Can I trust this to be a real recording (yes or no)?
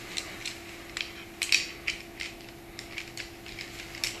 yes